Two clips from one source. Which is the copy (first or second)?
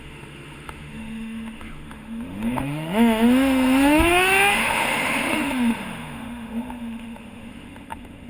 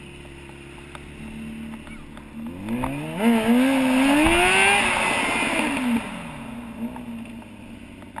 first